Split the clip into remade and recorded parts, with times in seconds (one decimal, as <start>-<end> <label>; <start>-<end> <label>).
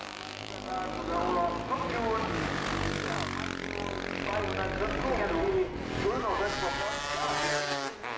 0.0-8.2 recorded